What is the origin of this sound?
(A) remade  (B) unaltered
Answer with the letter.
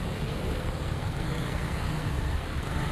A